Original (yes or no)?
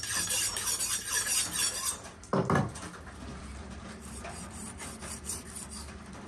no